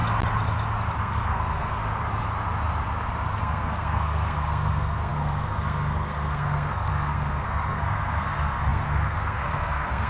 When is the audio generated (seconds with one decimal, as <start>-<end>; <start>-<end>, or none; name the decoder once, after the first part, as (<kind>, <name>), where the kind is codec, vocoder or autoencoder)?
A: 1.0-1.8 (codec, SNAC); 3.4-10.1